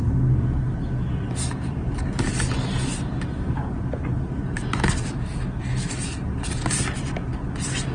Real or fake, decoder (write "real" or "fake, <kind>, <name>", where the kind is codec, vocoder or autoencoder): real